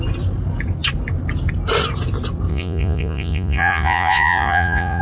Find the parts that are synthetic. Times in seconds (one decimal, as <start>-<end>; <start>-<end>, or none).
2.5-5.0

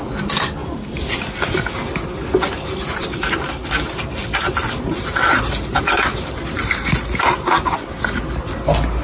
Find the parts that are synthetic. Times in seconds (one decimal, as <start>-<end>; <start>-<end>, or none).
none

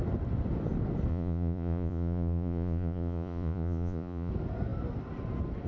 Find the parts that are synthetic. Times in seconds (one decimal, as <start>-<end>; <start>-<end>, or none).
1.1-4.3

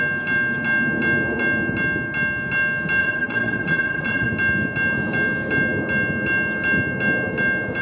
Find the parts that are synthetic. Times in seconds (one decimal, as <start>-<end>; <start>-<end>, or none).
3.0-4.3

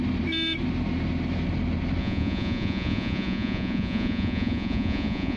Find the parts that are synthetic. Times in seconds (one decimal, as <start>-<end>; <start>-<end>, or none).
2.0-5.4

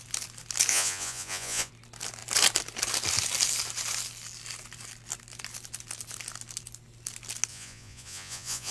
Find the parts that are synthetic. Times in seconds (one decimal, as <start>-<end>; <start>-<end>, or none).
0.7-1.7; 7.5-8.7

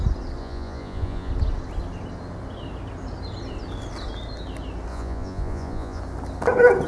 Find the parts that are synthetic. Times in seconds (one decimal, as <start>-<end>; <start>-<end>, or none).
0.4-1.3; 4.9-6.0

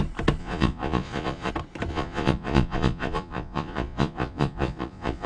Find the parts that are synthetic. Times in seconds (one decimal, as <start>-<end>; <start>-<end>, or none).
0.4-1.5; 1.9-5.3